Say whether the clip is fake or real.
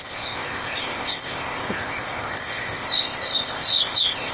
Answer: fake